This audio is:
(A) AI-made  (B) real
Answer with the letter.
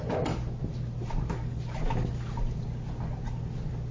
B